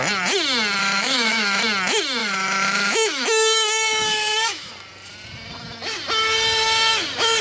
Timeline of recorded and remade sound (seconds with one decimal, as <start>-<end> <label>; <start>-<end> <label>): 0.0-0.8 recorded; 0.8-1.6 remade; 1.6-2.2 recorded; 2.2-4.7 remade; 4.7-7.4 recorded